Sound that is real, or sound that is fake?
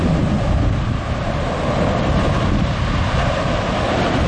real